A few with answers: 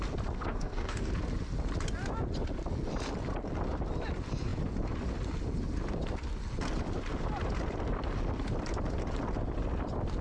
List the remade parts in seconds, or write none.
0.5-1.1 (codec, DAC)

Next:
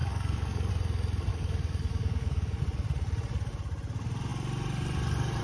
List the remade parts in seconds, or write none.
0.0-0.7 (codec, DAC); 1.3-2.6

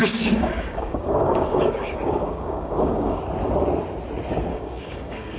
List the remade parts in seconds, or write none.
0.0-3.2 (codec, DAC); 4.5-5.4

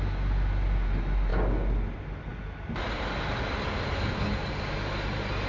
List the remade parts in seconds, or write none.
none